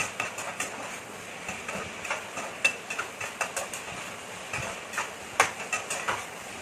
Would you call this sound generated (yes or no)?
no